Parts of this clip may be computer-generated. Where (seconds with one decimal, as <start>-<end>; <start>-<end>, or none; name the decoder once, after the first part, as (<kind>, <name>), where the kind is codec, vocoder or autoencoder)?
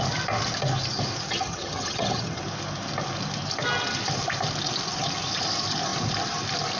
1.3-2.4 (vocoder, HiFi-GAN)